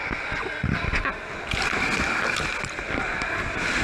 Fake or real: real